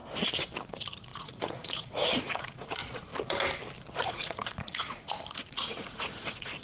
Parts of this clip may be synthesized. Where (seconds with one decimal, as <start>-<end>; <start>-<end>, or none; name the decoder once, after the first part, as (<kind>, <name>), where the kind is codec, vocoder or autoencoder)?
0.7-3.1 (vocoder, Vocos); 3.9-6.6